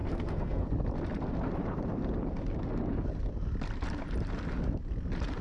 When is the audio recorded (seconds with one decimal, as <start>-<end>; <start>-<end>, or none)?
0.7-5.4